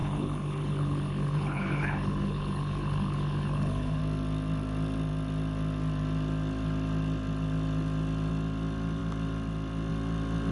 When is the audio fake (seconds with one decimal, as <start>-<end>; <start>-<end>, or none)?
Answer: 0.0-4.0